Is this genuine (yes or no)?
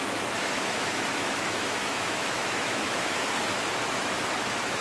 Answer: no